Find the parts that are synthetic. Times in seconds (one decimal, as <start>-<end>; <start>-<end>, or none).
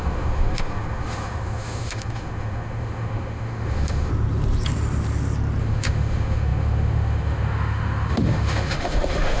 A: 0.0-4.1; 5.6-9.4